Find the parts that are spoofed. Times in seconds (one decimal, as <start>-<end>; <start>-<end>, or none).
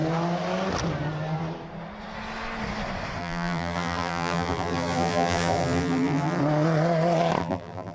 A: 3.2-6.4; 7.4-7.9